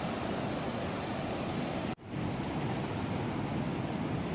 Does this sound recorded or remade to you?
recorded